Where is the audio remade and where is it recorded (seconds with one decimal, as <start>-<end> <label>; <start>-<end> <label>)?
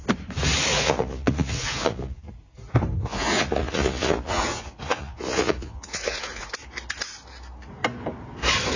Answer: 0.0-0.7 recorded; 0.7-2.3 remade; 2.3-3.0 recorded; 3.0-6.5 remade; 6.5-8.8 recorded